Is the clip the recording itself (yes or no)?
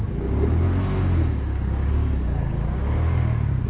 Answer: no